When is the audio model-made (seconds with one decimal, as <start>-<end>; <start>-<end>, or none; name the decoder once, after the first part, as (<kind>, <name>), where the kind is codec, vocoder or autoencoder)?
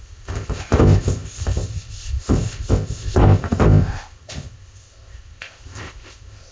0.0-6.5 (codec, ZipCodec)